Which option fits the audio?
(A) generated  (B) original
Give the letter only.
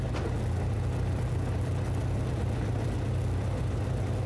B